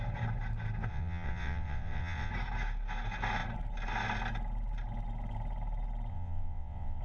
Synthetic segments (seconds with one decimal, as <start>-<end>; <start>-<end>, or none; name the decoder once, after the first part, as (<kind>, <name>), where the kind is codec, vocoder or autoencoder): 0.9-2.3 (vocoder, WaveNeXt); 6.1-7.0